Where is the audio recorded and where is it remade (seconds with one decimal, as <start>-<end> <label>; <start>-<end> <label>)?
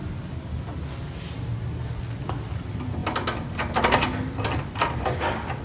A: 0.0-5.6 recorded